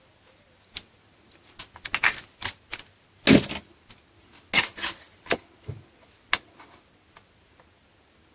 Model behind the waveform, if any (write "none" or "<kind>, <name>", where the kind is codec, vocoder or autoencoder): none